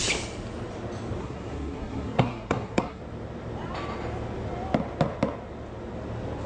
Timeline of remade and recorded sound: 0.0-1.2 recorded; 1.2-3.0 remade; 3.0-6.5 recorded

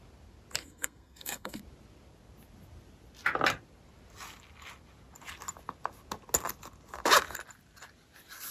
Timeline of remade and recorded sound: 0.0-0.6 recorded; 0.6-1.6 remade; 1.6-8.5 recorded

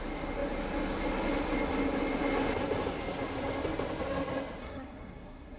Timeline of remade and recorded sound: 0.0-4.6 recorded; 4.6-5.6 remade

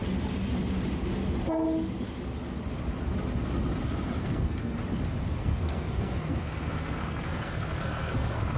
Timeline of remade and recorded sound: 0.0-4.2 recorded; 4.2-4.8 remade; 4.8-5.4 recorded; 5.4-8.6 remade

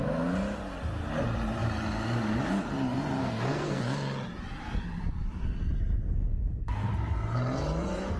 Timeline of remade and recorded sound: 0.0-3.2 recorded; 3.2-3.8 remade; 3.8-6.3 recorded; 6.3-6.9 remade; 6.9-8.2 recorded